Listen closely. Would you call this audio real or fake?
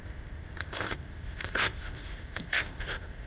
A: fake